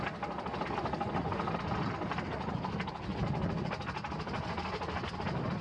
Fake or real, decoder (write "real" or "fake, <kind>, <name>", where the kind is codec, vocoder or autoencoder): real